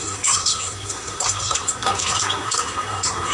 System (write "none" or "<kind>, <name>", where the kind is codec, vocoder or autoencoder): codec, SNAC